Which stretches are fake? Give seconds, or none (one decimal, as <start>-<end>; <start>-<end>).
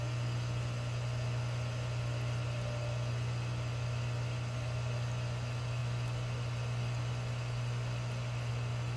none